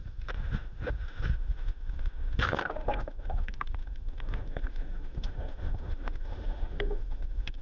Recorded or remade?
remade